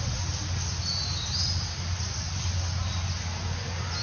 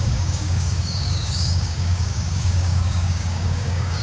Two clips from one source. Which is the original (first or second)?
first